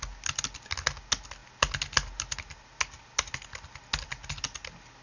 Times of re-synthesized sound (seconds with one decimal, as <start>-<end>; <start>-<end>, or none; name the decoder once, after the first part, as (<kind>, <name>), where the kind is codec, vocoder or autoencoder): none